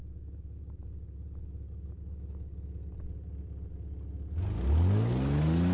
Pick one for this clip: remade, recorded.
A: recorded